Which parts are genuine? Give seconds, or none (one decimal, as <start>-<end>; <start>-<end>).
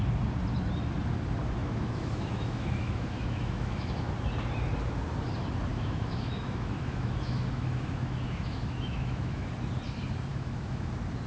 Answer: 0.0-1.6; 4.1-5.7; 9.5-10.3; 10.9-11.3